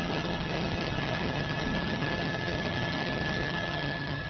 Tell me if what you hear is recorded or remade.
remade